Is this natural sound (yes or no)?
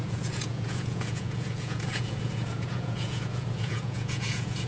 no